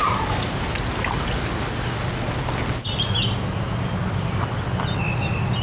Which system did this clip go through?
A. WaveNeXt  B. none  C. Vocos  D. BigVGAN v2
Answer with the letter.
B